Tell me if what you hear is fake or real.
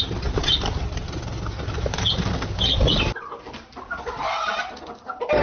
real